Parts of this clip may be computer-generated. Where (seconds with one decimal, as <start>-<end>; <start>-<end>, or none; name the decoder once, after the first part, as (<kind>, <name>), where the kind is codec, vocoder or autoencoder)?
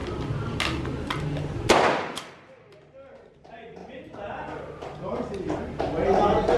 none